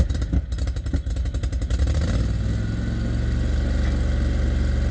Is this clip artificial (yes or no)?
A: no